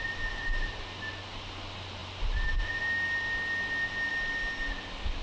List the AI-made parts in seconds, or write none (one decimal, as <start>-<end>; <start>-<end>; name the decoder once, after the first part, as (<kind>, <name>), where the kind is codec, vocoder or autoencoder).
none